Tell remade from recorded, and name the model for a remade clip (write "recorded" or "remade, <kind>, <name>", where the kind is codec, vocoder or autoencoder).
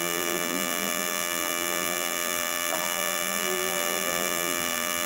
remade, vocoder, BigVGAN v2